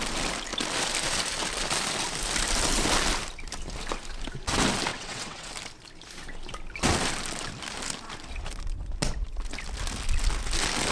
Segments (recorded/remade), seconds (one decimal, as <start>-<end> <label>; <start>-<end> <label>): 0.0-4.9 recorded; 4.9-5.5 remade; 5.5-10.9 recorded